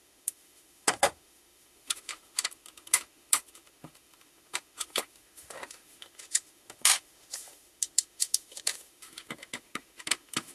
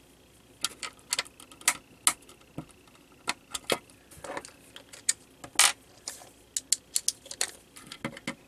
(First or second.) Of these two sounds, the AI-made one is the first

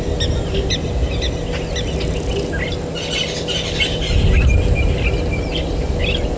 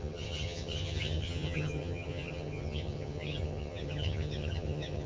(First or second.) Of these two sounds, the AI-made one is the second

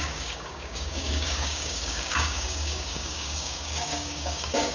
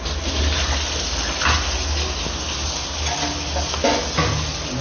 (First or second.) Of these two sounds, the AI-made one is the first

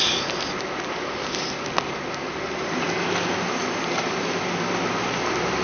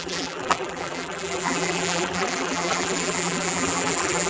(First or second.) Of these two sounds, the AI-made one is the second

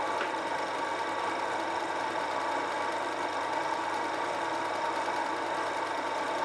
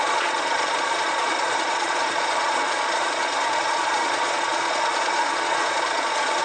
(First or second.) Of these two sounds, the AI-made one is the second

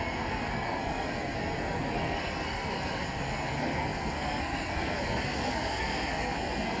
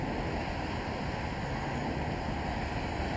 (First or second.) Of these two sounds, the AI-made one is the first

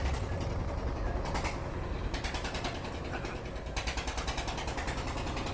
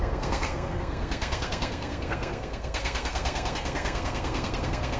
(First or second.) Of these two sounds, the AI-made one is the second